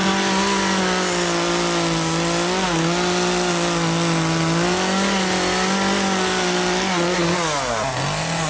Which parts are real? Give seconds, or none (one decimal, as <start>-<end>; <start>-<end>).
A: 0.0-8.5